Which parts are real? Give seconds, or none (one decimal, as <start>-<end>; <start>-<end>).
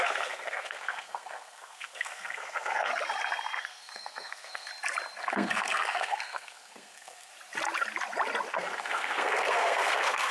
2.9-3.6; 4.7-5.2; 7.3-8.5